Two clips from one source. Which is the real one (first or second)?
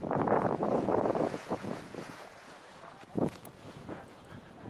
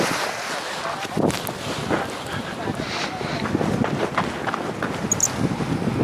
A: second